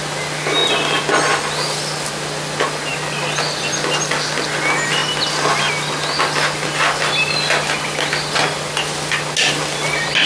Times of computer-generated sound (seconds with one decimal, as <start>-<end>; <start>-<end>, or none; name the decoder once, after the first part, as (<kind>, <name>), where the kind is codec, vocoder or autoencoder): none